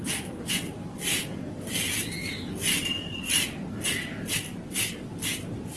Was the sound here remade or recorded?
recorded